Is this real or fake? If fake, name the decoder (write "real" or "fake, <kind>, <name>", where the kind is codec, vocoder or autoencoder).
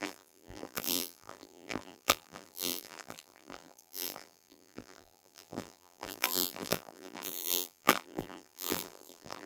fake, vocoder, BigVGAN v2